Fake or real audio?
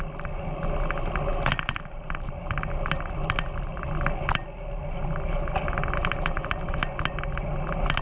real